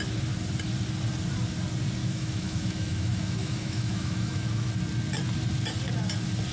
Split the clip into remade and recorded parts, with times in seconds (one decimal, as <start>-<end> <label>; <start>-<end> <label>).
0.0-2.0 recorded; 2.0-4.7 remade; 4.7-6.5 recorded